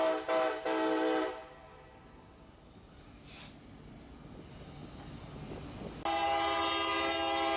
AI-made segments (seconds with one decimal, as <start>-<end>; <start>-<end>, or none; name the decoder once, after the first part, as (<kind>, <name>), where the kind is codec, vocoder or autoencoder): none